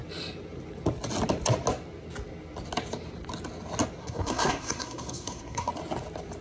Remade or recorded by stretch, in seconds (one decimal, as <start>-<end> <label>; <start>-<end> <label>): 0.0-4.0 recorded; 4.0-5.7 remade; 5.7-6.4 recorded